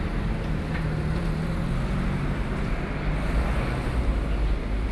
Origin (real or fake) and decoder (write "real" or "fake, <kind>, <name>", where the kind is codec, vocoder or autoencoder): real